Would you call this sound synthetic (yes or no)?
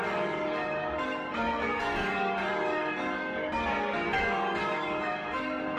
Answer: yes